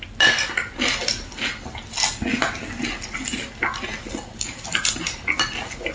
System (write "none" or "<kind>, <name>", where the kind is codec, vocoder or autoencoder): none